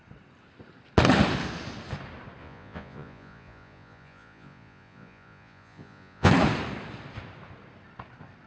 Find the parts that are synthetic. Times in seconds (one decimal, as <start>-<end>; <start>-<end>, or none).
2.4-6.3